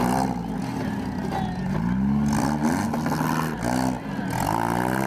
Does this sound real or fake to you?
real